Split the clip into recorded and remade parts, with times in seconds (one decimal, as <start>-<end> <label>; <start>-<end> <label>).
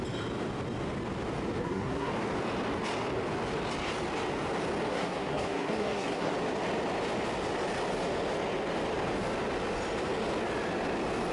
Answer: 0.0-1.6 recorded; 1.6-2.1 remade; 2.1-4.9 recorded; 4.9-6.3 remade; 6.3-11.3 recorded